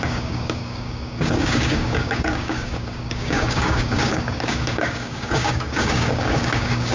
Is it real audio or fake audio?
fake